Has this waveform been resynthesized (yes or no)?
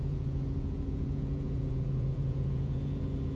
yes